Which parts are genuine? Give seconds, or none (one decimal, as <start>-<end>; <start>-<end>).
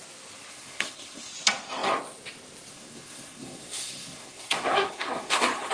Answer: 0.0-0.5; 1.3-2.7